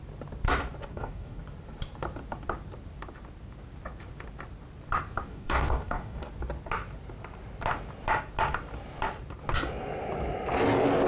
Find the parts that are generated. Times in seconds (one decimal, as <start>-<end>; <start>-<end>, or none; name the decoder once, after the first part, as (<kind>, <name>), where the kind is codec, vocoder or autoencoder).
0.9-1.4 (codec, DAC); 5.3-6.2

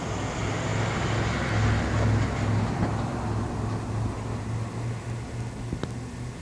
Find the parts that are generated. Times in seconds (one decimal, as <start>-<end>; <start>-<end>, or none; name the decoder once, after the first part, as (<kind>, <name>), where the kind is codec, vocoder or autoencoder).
none